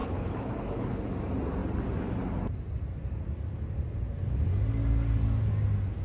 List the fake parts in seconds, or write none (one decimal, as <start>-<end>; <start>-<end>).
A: 0.0-1.1